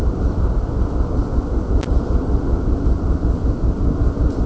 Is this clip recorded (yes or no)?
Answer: yes